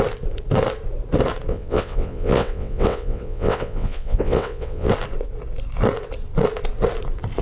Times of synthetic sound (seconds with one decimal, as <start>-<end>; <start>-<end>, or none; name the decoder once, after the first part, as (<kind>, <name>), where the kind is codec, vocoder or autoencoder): 1.5-4.9 (vocoder, WaveNeXt)

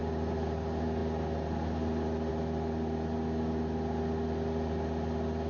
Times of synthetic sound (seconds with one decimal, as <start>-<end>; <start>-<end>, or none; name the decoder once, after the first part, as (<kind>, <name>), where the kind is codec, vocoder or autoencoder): none